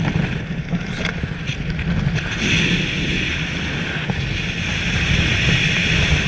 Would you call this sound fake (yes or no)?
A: no